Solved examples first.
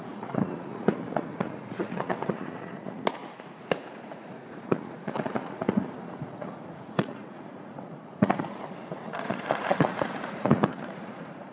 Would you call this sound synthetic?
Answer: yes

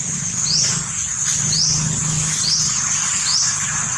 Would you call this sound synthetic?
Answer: no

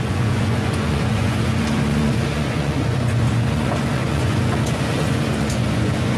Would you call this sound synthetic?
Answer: yes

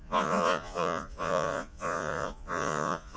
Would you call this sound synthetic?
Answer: yes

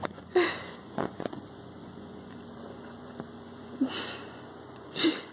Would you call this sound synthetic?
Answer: yes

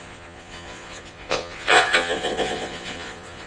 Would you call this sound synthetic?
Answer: yes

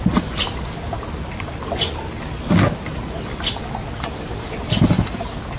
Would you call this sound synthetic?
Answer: no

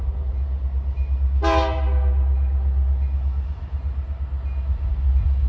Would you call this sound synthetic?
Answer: no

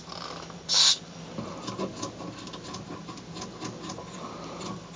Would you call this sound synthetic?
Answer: no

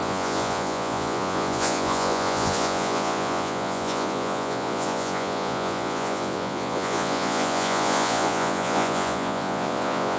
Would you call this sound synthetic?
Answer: yes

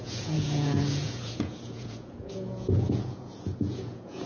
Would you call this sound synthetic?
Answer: yes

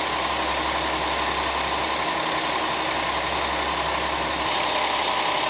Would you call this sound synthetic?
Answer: no